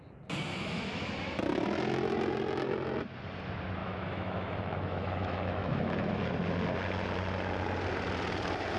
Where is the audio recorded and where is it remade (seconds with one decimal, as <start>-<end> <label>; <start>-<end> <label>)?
0.0-0.5 recorded; 0.5-1.1 remade; 1.1-3.8 recorded; 3.8-6.2 remade; 6.2-8.8 recorded